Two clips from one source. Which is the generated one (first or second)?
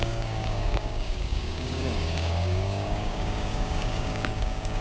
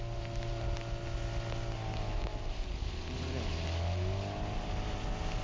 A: first